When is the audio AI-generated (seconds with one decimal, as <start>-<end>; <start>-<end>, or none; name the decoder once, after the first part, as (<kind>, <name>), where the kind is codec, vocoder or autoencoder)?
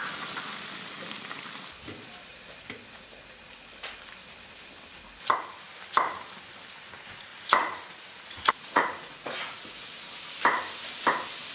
7.3-9.9 (vocoder, Vocos)